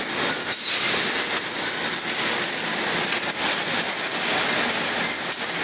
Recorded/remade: recorded